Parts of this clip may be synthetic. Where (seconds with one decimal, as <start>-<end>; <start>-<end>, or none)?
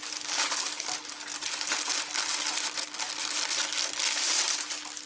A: none